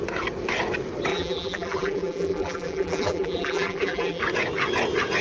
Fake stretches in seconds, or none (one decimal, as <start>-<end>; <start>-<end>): 1.1-4.2